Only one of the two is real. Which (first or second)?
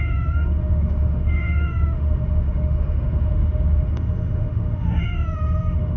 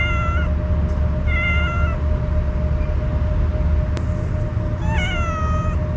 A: second